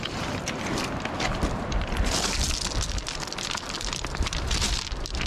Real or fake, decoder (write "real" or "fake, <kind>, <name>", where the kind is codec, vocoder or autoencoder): real